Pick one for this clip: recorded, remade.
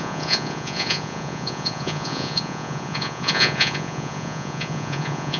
remade